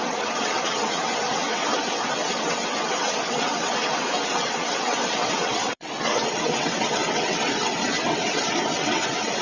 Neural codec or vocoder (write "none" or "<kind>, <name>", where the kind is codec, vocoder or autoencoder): vocoder, WaveNeXt